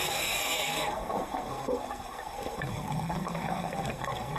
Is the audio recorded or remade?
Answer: remade